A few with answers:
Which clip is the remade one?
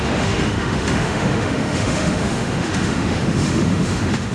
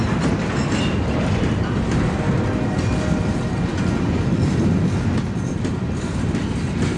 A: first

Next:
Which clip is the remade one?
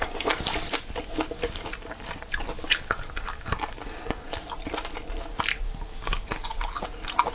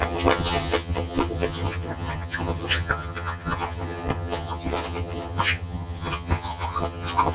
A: second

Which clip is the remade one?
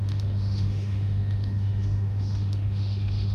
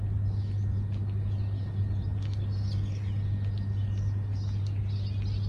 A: first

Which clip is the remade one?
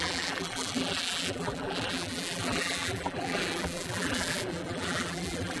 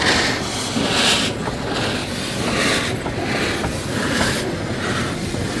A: first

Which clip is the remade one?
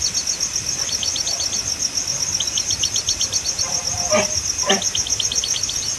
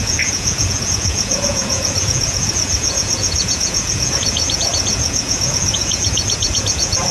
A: second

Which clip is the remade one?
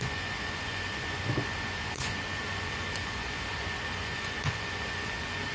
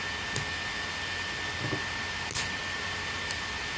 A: first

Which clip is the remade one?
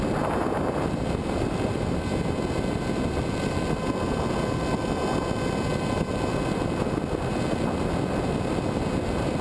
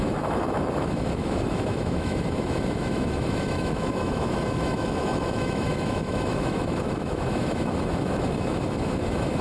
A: second